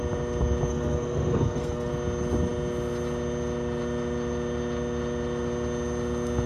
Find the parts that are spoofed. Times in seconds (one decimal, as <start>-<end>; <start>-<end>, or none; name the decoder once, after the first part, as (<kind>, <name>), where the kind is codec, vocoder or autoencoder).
0.7-1.9 (codec, SNAC)